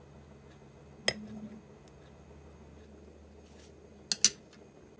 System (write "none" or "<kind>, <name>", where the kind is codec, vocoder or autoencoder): none